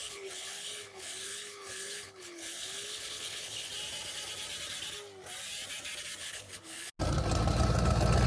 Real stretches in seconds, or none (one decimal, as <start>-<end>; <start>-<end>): 3.7-6.2; 6.9-8.3